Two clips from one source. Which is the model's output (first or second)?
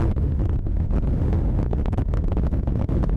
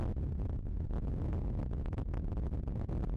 first